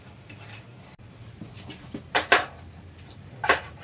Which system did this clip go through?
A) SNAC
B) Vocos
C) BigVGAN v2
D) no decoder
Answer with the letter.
C